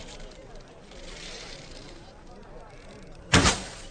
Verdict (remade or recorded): remade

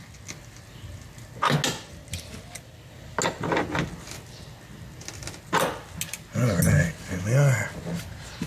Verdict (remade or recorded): recorded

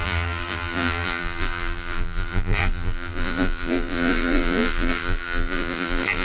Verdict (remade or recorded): remade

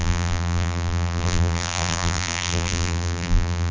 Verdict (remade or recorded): remade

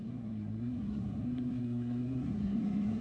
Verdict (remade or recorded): remade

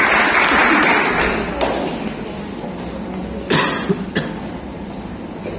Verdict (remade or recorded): recorded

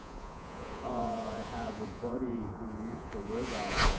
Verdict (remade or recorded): remade